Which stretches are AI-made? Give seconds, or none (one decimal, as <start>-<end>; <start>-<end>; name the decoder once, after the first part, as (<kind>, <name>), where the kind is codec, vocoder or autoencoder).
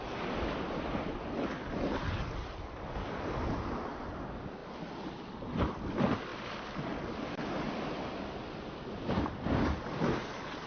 none